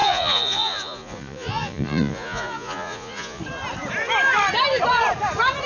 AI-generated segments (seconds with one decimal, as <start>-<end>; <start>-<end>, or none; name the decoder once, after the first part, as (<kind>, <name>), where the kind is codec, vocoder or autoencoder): 0.0-3.4 (vocoder, Vocos)